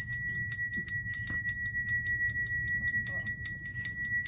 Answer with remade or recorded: recorded